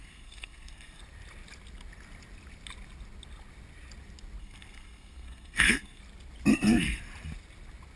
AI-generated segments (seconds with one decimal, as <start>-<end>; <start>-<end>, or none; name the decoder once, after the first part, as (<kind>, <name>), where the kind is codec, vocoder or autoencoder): 0.0-1.0 (codec, SNAC); 4.4-6.0; 6.5-7.0